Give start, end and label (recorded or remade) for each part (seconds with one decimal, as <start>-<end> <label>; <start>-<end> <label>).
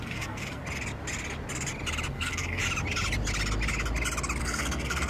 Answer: 0.0-0.6 remade; 0.6-2.1 recorded; 2.1-2.6 remade; 2.6-4.4 recorded; 4.4-5.1 remade